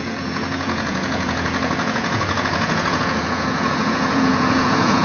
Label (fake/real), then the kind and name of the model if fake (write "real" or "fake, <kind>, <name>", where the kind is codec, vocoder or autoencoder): fake, vocoder, Vocos